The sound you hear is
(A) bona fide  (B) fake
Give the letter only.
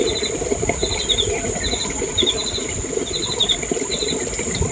A